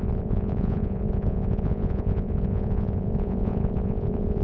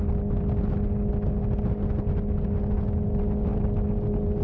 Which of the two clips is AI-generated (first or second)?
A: first